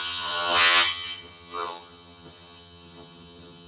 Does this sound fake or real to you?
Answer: fake